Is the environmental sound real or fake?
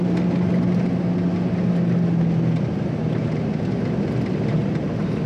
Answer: real